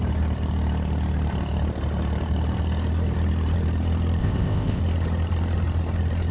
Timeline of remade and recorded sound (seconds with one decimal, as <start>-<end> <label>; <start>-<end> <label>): 0.0-4.2 recorded; 4.2-4.8 remade; 4.8-6.3 recorded